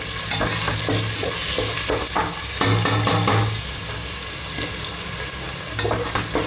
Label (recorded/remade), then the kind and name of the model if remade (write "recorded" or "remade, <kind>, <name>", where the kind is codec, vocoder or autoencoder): recorded